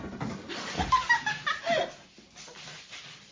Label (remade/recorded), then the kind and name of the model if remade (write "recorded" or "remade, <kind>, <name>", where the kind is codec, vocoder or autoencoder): recorded